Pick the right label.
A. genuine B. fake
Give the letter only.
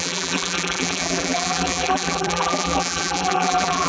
B